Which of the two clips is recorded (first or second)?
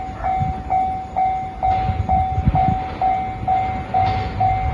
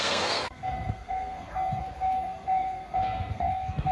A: first